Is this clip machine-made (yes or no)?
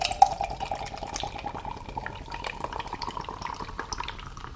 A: no